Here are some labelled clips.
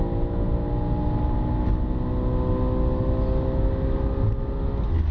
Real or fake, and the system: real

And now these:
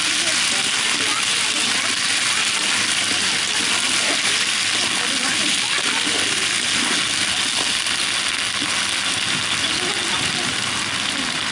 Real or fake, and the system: real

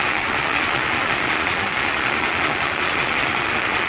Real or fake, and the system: fake, vocoder, Vocos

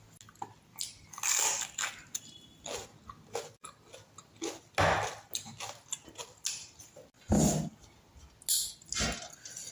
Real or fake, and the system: real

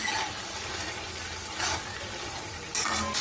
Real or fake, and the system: real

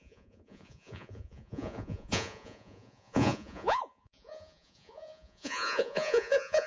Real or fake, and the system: fake, vocoder, Vocos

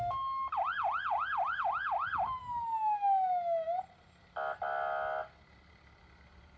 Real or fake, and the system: real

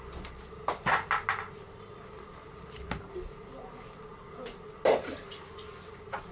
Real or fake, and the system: real